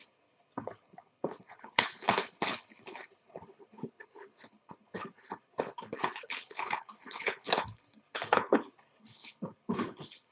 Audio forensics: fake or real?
fake